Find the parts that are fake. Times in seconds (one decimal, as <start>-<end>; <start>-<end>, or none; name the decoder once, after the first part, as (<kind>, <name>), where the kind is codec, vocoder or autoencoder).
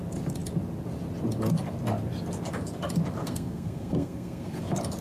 3.2-4.6 (codec, SNAC)